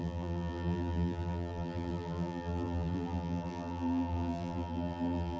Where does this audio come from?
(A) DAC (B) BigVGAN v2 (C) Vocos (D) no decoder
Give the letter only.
B